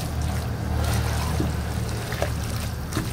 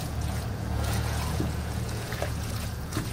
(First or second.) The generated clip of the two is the second